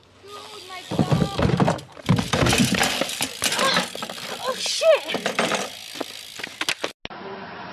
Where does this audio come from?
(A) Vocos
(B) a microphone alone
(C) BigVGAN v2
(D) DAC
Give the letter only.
B